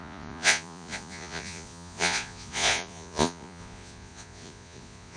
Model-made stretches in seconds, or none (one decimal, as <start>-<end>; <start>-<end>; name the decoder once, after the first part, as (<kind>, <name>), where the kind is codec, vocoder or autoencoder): 0.0-5.2 (vocoder, Vocos)